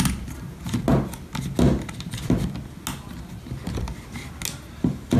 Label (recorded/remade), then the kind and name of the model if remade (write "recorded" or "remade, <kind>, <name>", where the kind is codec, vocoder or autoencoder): recorded